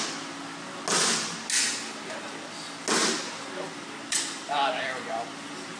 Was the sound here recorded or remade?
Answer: recorded